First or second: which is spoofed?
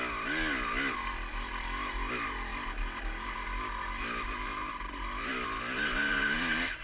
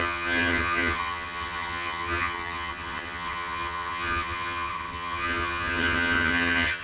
second